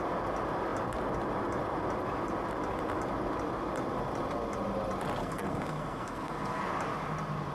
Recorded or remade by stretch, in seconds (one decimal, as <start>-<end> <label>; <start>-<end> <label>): 0.0-5.2 recorded; 5.2-6.6 remade; 6.6-7.5 recorded

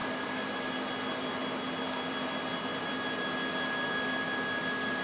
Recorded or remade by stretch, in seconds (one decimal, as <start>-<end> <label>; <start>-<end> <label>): 0.0-5.0 recorded

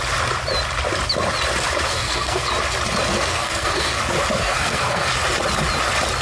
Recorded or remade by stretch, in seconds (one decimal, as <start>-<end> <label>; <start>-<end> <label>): 0.0-1.9 recorded; 1.9-2.5 remade; 2.5-3.1 recorded; 3.1-4.0 remade; 4.0-4.4 recorded; 4.4-5.1 remade; 5.1-6.2 recorded

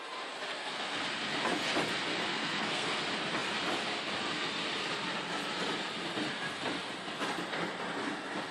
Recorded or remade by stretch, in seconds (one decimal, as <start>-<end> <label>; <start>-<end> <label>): 0.0-0.5 recorded; 0.5-1.0 remade; 1.0-2.3 recorded; 2.3-3.0 remade; 3.0-8.5 recorded

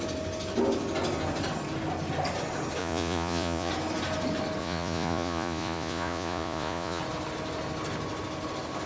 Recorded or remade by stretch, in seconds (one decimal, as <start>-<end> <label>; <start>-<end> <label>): 0.0-2.8 recorded; 2.8-3.7 remade; 3.7-4.6 recorded; 4.6-7.0 remade; 7.0-8.9 recorded